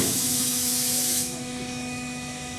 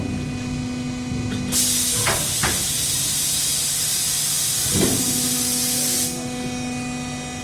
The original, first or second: second